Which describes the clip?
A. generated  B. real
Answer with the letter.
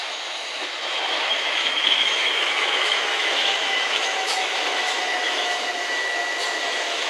A